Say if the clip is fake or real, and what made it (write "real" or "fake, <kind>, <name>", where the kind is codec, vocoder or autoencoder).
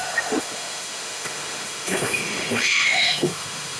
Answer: fake, autoencoder, DAC-VAE